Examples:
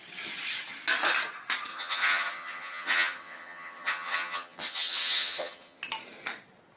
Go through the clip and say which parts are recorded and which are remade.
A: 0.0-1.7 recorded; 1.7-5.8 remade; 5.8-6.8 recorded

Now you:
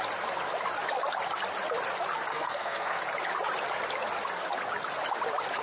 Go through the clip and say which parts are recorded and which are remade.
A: 0.0-2.3 recorded; 2.3-3.0 remade; 3.0-5.6 recorded

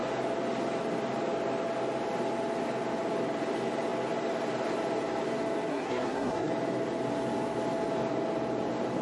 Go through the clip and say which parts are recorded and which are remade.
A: 0.0-5.7 recorded; 5.7-6.5 remade; 6.5-9.0 recorded

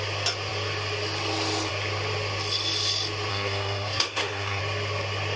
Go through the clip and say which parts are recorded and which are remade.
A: 0.0-3.3 recorded; 3.3-4.6 remade; 4.6-5.4 recorded

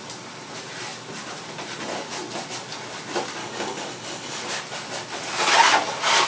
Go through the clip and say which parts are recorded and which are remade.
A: 0.0-3.4 recorded; 3.4-4.4 remade; 4.4-6.3 recorded